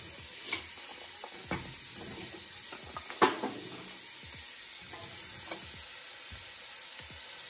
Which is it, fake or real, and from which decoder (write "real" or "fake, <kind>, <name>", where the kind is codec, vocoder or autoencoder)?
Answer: real